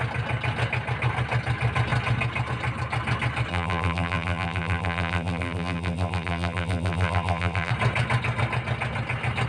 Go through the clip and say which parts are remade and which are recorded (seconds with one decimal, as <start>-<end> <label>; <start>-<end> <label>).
0.0-3.5 recorded; 3.5-7.7 remade; 7.7-9.5 recorded